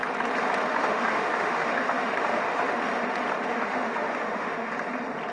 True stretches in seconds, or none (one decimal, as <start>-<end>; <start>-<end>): 0.0-0.7; 2.9-3.5; 4.7-5.3